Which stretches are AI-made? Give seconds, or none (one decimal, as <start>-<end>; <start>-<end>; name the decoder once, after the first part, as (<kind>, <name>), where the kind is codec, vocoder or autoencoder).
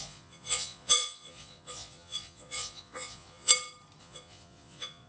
0.0-3.5 (vocoder, Vocos); 4.0-5.1